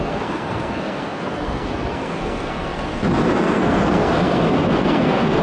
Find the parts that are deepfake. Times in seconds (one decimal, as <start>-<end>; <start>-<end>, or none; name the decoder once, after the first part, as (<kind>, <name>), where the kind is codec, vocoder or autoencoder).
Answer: 0.0-5.4 (codec, SNAC)